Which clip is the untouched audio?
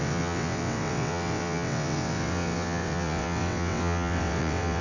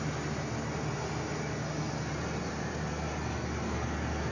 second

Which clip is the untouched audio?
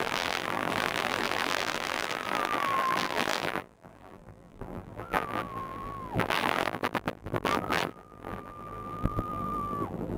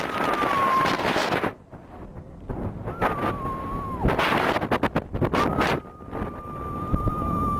second